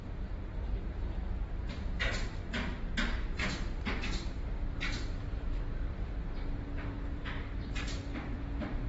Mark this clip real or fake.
fake